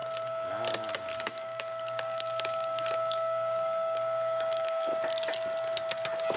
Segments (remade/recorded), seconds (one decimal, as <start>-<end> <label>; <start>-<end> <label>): 0.0-0.5 remade; 0.5-1.1 recorded; 1.1-4.9 remade; 4.9-6.4 recorded